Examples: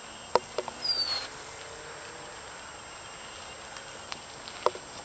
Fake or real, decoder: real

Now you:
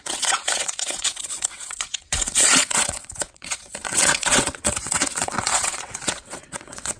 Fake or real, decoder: fake, vocoder, WaveNeXt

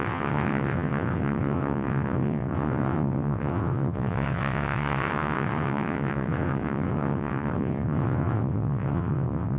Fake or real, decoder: fake, vocoder, WaveNeXt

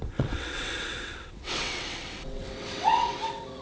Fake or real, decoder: fake, vocoder, WaveNeXt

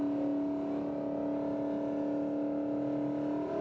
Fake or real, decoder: real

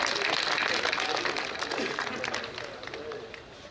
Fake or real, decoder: real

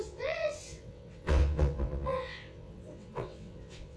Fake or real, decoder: fake, vocoder, WaveNeXt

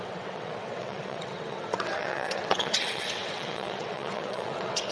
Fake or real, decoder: fake, vocoder, WaveNeXt